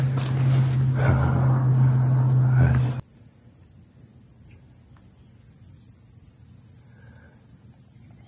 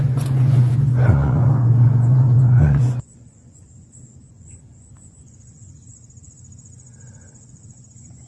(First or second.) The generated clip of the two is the second